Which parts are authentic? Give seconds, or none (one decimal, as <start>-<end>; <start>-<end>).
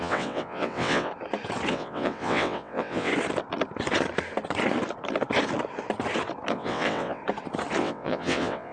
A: 1.1-1.7; 3.1-6.5; 7.2-7.8